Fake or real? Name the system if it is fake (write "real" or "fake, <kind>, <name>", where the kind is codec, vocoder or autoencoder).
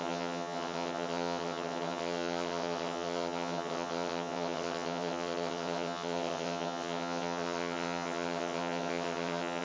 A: fake, vocoder, HiFi-GAN